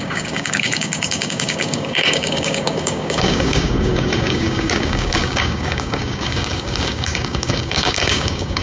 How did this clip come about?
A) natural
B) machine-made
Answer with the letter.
B